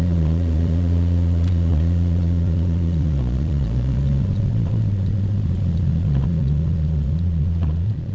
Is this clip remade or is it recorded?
remade